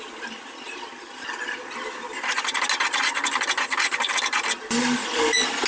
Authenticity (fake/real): real